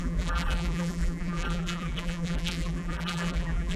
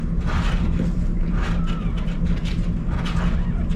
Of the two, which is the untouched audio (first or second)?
second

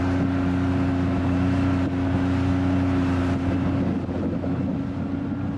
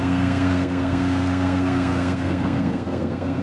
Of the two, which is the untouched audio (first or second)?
first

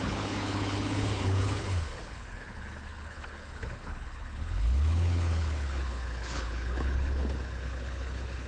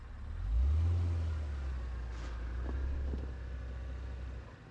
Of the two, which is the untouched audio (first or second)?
second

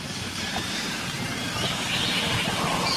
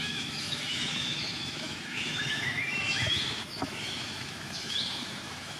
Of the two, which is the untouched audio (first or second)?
first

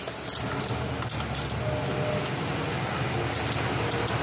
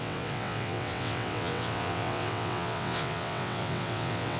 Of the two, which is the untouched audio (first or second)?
first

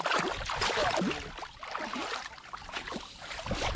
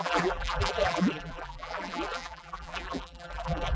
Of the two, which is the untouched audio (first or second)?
first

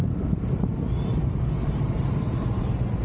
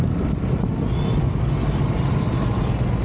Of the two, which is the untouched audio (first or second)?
second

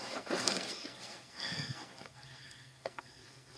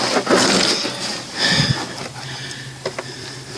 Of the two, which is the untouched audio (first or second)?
second